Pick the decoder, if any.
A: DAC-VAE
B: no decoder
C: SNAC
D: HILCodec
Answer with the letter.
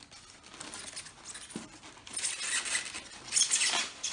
B